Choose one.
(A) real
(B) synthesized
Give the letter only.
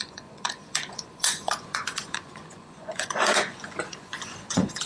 B